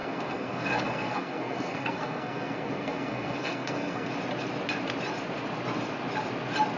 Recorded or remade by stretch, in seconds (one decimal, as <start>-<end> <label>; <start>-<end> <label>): 0.0-4.1 remade; 4.1-6.8 recorded